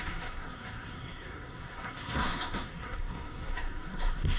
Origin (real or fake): fake